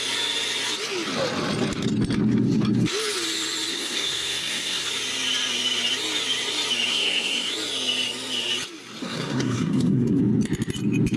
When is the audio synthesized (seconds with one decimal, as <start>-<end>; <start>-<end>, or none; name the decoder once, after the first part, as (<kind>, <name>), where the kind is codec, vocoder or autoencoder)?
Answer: 3.7-4.9 (codec, SNAC); 6.9-7.5; 9.0-10.2